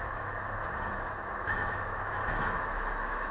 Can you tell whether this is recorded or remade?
remade